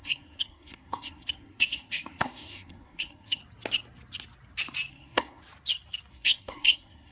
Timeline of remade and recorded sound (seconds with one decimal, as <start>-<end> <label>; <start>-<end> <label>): 0.0-3.4 remade; 3.4-4.9 recorded; 4.9-5.4 remade; 5.4-6.1 recorded; 6.1-7.1 remade